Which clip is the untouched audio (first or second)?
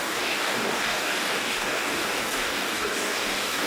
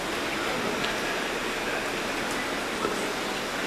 second